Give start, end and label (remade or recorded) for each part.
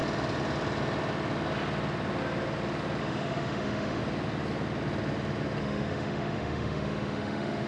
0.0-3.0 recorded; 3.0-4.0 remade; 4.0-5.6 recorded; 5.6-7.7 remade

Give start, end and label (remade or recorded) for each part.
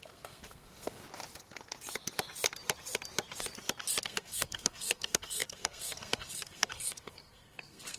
0.0-1.0 remade; 1.0-4.0 recorded; 4.0-8.0 remade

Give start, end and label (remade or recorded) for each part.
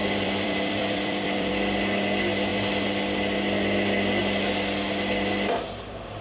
0.0-1.5 remade; 1.5-6.2 recorded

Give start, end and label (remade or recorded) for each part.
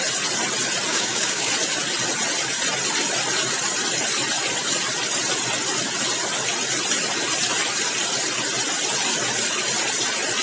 0.0-0.9 recorded; 0.9-1.5 remade; 1.5-10.4 recorded